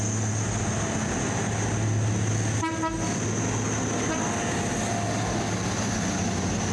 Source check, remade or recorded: recorded